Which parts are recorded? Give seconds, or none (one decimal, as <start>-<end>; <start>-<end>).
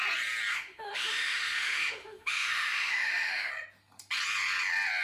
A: 0.0-0.5; 3.5-5.0